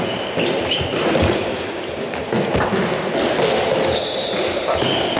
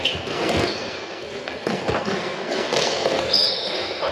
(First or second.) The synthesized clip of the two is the second